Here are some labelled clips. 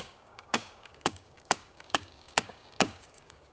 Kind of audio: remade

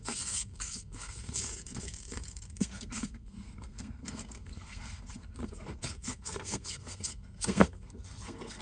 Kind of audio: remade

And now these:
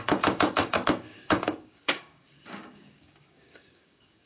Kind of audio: remade